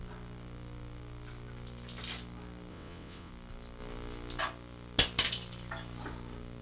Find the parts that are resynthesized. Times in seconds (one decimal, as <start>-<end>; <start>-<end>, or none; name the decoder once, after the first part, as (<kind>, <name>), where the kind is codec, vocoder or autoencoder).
2.7-3.3 (vocoder, WaveNeXt)